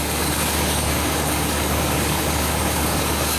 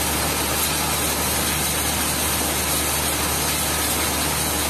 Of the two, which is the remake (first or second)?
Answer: first